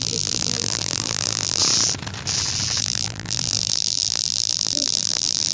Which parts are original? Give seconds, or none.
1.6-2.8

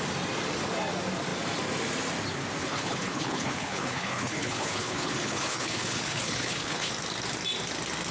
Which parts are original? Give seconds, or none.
0.0-2.6; 6.9-8.1

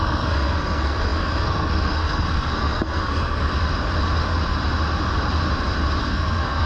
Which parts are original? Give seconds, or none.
3.4-6.0

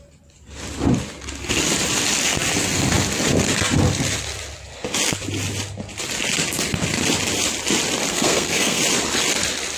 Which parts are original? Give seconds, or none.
0.0-8.1; 8.8-9.8